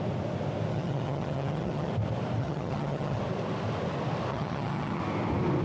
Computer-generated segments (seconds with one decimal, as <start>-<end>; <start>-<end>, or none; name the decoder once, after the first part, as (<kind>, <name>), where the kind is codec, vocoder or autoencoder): 0.7-1.9 (vocoder, HiFi-GAN); 2.4-3.2; 4.3-5.0